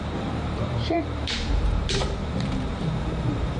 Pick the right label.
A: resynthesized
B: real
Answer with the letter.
A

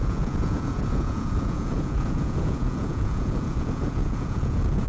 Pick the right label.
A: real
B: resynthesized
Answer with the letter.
B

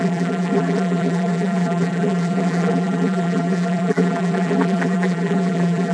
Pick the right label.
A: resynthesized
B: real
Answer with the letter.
A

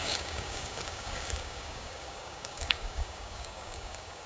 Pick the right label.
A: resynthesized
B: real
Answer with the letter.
A